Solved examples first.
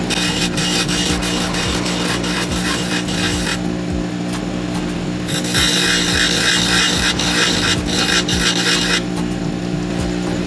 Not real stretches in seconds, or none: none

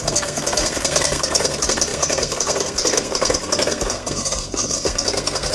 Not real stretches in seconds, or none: 0.0-5.5 (codec, SNAC)

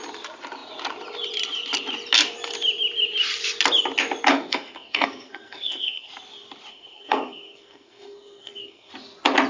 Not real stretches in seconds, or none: 4.3-6.1 (codec, SNAC); 6.7-8.9